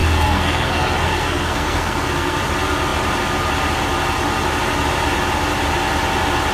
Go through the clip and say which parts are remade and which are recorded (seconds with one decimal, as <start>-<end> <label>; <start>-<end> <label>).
0.0-2.4 remade; 2.4-6.5 recorded